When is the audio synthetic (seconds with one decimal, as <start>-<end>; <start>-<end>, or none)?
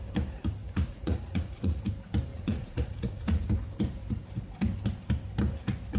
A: 0.6-1.8; 2.3-3.4